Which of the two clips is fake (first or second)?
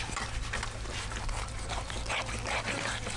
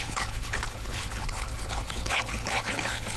second